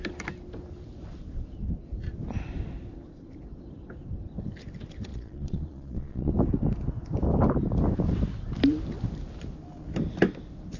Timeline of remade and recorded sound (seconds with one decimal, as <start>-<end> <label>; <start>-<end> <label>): 0.0-5.1 recorded; 5.1-6.3 remade; 6.3-10.8 recorded